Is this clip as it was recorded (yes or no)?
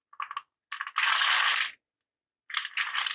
yes